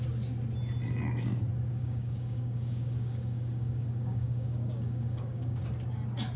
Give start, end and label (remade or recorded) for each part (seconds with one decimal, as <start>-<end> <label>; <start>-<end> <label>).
0.0-1.8 recorded; 1.8-5.6 remade; 5.6-6.4 recorded

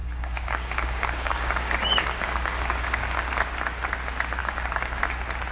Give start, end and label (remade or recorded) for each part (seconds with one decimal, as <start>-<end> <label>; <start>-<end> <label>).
0.0-3.3 remade; 3.3-4.4 recorded; 4.4-5.0 remade; 5.0-5.5 recorded

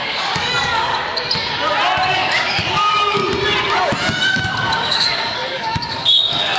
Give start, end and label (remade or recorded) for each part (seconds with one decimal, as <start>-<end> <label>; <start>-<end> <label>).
0.0-0.9 remade; 0.9-2.1 recorded; 2.1-3.2 remade; 3.2-4.4 recorded; 4.4-6.6 remade